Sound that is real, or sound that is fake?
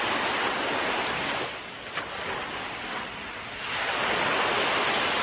real